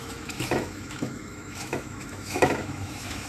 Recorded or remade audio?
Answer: remade